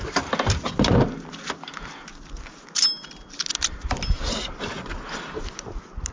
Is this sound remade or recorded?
recorded